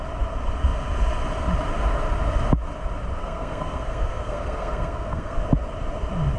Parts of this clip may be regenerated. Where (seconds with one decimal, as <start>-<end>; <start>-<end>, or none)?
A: 3.2-5.5